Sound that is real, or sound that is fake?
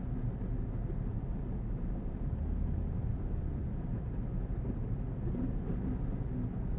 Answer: real